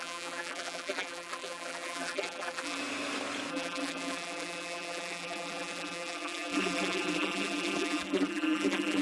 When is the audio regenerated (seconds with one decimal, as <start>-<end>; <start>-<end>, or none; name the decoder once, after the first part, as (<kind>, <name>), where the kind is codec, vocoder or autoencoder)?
0.0-2.8 (vocoder, BigVGAN v2); 3.5-9.0